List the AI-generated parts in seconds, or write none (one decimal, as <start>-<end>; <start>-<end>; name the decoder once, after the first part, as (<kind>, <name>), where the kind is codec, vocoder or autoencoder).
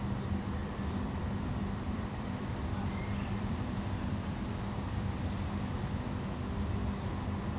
0.6-5.2 (vocoder, BigVGAN v2)